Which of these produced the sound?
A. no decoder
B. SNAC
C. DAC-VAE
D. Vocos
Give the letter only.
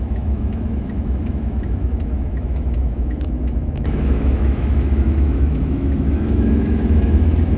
C